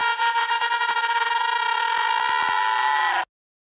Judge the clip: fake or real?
real